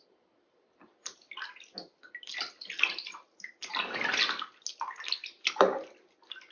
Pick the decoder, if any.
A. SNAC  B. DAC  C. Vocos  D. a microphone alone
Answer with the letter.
D